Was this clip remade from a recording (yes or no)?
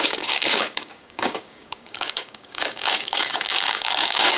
yes